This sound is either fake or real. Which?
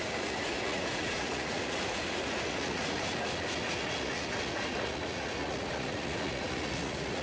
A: fake